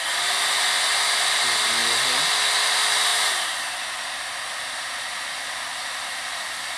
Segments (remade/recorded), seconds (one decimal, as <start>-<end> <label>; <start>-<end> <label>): 0.0-1.8 recorded; 1.8-2.3 remade; 2.3-3.1 recorded; 3.1-5.1 remade; 5.1-5.7 recorded; 5.7-6.8 remade